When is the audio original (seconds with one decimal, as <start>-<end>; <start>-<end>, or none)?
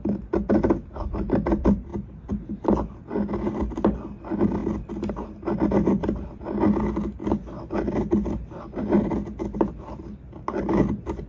0.0-11.3